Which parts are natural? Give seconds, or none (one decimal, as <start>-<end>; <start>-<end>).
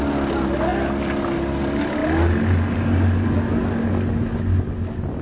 0.0-5.2